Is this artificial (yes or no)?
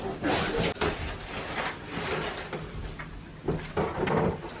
no